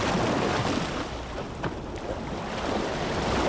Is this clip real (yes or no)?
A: yes